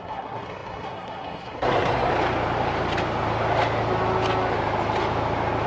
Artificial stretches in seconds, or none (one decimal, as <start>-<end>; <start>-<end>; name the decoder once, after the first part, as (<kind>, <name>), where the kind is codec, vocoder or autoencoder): 0.0-2.1 (codec, SNAC)